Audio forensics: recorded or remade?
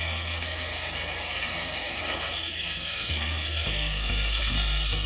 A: remade